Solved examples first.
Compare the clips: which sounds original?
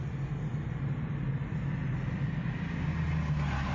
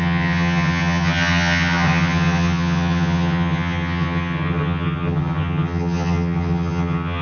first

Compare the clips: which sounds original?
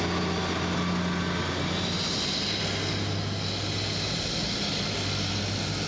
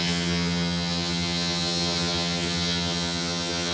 first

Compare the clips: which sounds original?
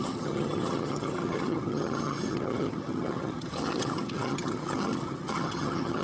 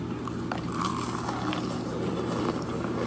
second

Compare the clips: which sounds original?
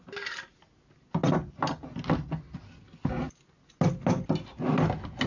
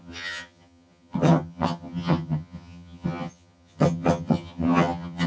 first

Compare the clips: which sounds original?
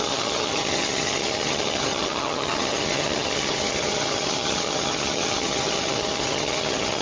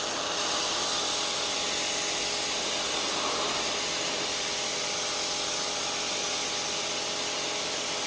second